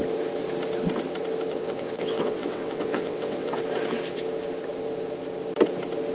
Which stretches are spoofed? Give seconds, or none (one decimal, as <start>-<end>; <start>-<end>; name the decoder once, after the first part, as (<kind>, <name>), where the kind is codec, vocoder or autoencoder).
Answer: 1.5-3.6 (vocoder, WaveNeXt)